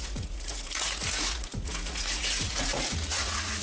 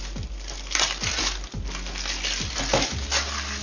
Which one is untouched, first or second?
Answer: second